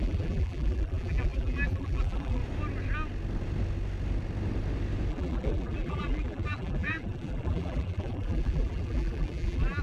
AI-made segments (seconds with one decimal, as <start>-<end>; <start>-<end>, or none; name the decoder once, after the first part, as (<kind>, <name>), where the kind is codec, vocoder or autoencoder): 0.0-2.4 (vocoder, BigVGAN v2); 5.1-9.8